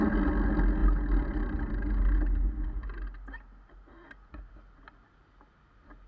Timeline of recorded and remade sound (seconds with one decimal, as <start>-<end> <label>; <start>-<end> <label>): 0.0-6.1 recorded

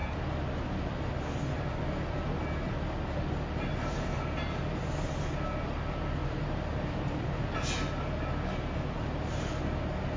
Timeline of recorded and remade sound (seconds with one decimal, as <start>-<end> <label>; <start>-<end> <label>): 0.0-10.2 recorded

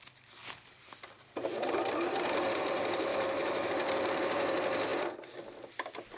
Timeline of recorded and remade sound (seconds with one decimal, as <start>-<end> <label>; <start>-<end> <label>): 0.0-3.1 recorded; 3.1-3.7 remade; 3.7-6.2 recorded

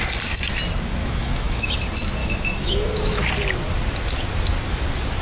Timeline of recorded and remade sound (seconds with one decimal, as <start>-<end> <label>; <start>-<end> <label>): 0.0-1.0 recorded; 1.0-1.7 remade; 1.7-2.2 recorded; 2.2-3.2 remade; 3.2-5.2 recorded